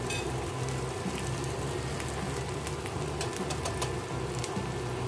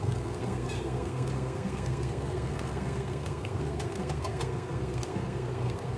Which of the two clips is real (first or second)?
first